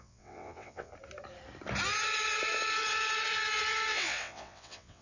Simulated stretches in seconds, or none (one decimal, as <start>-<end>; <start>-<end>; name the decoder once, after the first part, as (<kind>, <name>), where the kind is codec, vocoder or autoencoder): 0.0-0.9 (vocoder, WaveNeXt); 3.9-5.0